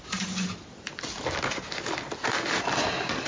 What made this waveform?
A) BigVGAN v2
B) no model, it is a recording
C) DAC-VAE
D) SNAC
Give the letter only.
B